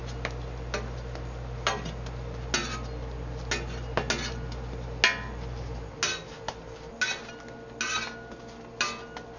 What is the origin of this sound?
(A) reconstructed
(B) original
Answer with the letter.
B